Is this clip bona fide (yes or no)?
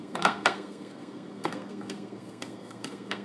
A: no